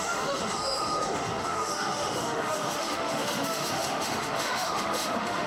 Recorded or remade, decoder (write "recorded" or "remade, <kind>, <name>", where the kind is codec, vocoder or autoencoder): remade, autoencoder, DAC-VAE